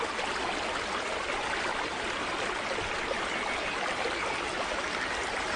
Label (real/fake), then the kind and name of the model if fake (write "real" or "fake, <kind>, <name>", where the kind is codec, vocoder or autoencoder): real